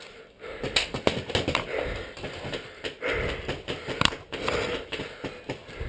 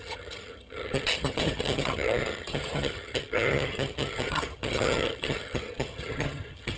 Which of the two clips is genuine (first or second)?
first